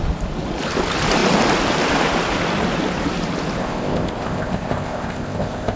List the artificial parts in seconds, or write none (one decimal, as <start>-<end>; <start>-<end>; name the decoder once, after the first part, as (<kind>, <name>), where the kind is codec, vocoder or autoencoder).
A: 3.6-5.8 (codec, ZipCodec)